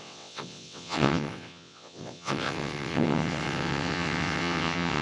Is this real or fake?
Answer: fake